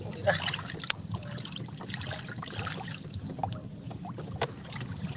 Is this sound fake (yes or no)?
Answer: yes